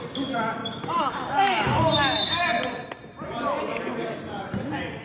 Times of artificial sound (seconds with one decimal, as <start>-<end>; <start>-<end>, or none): 0.6-2.4